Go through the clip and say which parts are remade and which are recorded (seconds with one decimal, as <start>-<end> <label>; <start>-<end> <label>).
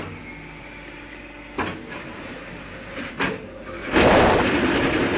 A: 0.0-2.5 recorded; 2.5-3.1 remade; 3.1-3.8 recorded; 3.8-5.2 remade